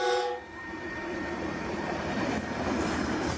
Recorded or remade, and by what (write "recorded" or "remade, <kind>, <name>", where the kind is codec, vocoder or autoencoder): remade, vocoder, BigVGAN v2